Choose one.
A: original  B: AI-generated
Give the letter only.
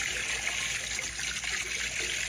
A